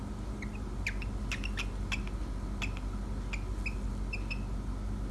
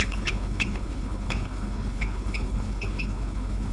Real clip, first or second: first